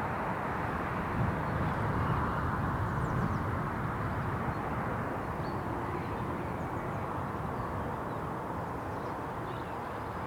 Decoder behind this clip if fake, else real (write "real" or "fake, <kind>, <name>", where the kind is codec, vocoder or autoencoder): real